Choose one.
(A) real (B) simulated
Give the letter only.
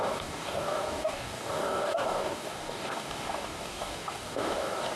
B